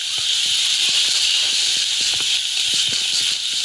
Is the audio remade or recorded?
remade